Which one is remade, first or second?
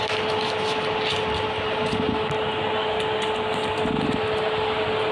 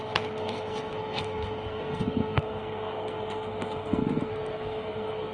second